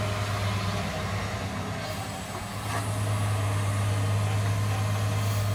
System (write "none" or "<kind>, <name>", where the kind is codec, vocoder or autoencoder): none